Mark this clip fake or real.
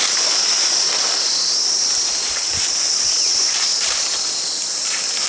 real